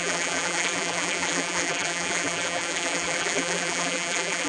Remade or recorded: remade